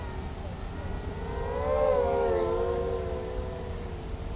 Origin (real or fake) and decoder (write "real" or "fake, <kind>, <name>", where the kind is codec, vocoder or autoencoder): real